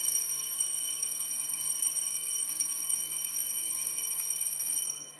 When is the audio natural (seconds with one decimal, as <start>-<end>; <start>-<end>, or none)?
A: none